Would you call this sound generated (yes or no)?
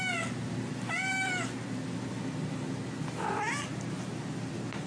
no